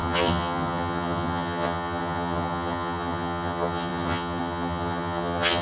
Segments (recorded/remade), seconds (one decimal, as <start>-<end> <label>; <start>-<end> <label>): 0.0-5.6 remade